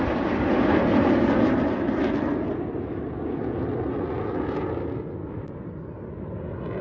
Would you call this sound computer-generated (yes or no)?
no